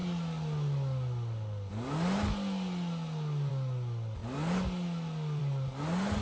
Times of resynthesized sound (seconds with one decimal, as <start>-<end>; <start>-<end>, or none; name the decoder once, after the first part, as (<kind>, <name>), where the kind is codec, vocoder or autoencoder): none